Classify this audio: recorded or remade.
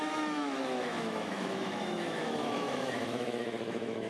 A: remade